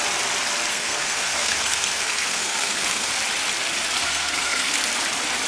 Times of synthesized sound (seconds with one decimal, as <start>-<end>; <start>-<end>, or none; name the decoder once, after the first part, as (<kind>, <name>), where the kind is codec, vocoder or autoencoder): 0.7-3.1 (codec, SNAC); 4.0-4.7